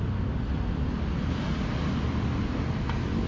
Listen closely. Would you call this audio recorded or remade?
recorded